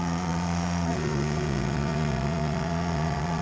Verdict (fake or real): fake